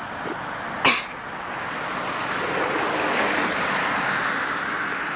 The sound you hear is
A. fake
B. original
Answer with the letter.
B